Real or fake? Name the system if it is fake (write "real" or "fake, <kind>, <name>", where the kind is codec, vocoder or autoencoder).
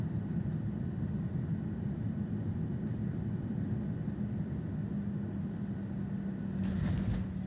real